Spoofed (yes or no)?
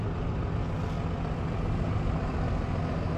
no